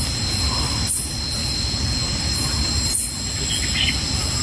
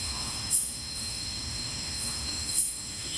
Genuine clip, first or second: first